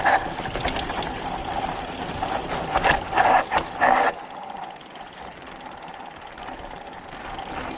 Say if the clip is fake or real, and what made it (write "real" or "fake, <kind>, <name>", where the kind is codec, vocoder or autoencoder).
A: real